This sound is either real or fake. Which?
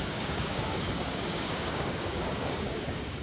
fake